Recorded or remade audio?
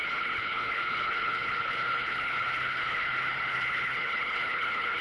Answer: remade